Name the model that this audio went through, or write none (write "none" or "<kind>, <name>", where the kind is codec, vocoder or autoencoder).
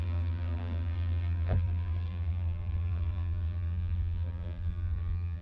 vocoder, BigVGAN v2